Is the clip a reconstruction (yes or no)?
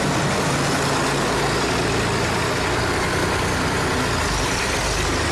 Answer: no